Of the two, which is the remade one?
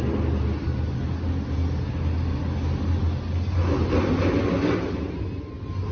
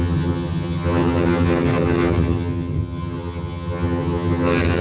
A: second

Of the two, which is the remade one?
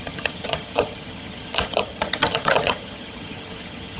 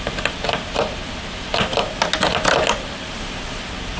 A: first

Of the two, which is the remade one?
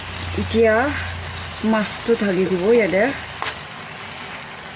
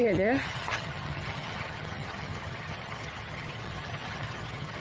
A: second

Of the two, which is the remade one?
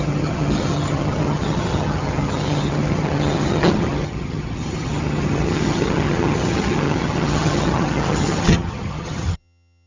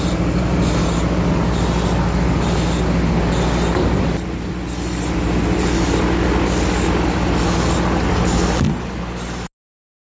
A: first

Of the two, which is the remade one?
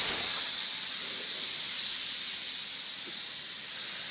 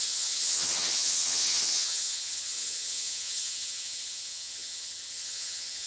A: second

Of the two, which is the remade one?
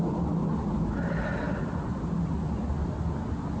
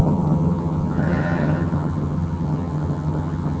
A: second